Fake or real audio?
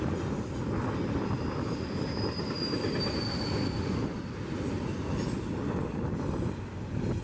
fake